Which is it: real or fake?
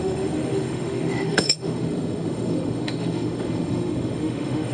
fake